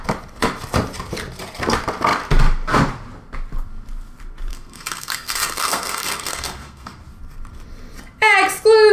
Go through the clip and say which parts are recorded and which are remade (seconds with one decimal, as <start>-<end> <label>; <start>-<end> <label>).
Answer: 0.0-4.5 recorded; 4.5-7.0 remade; 7.0-8.9 recorded